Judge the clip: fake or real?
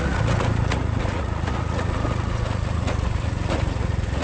fake